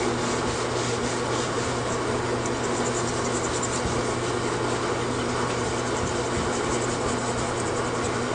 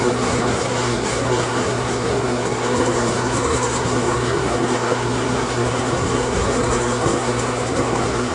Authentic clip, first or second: first